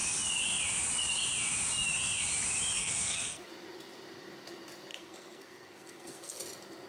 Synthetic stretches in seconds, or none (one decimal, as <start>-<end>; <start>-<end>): 2.8-3.5; 4.9-6.4